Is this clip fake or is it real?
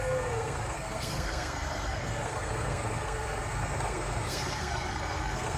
fake